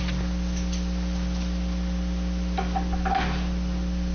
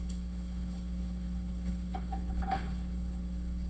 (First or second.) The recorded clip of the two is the first